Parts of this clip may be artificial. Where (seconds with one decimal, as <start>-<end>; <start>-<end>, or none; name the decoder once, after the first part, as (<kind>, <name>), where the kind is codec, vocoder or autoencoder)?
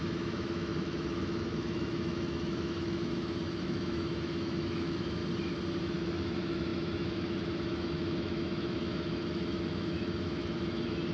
0.0-5.2 (autoencoder, DAC-VAE); 5.8-11.1